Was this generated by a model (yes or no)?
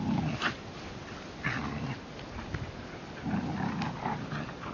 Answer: no